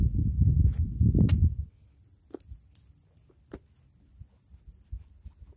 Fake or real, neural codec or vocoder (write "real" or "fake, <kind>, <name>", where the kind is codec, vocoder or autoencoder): real